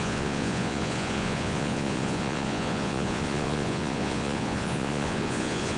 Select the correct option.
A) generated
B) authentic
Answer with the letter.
A